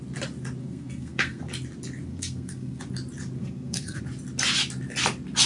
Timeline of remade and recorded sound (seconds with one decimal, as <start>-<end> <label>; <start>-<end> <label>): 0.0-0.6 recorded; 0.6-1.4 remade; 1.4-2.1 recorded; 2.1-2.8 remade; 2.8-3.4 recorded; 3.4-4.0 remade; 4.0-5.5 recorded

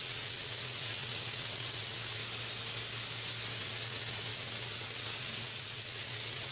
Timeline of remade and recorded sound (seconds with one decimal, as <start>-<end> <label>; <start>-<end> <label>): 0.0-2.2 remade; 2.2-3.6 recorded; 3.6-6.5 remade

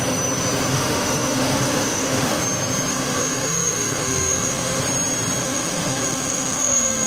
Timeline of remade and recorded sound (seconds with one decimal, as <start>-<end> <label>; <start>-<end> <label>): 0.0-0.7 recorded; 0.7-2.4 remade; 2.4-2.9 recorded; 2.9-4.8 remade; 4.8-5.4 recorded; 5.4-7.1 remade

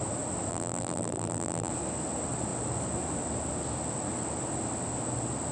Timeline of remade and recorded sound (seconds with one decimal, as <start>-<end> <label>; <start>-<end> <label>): 0.0-0.5 recorded; 0.5-1.7 remade; 1.7-5.5 recorded